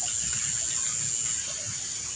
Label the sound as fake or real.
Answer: real